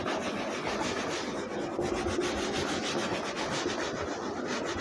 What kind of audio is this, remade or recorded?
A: remade